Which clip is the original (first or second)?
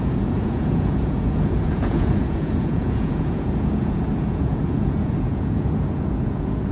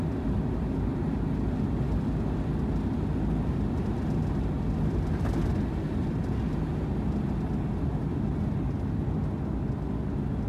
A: second